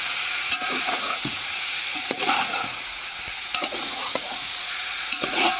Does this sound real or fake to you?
fake